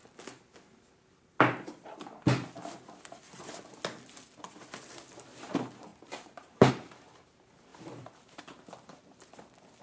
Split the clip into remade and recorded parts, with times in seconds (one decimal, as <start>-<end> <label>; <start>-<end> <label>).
0.0-5.9 recorded; 5.9-6.7 remade; 6.7-7.7 recorded; 7.7-8.4 remade; 8.4-9.8 recorded